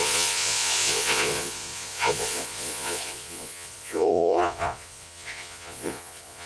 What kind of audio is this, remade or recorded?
remade